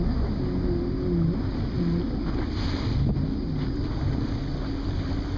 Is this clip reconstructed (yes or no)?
no